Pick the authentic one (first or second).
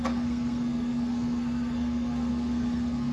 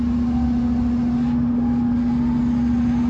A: second